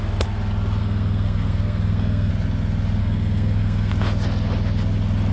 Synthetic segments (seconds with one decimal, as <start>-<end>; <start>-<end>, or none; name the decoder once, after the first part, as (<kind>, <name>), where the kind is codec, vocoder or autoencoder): 0.8-2.3 (codec, SNAC); 3.0-3.9